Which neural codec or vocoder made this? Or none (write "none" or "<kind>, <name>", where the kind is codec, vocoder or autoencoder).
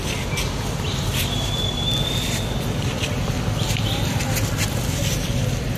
none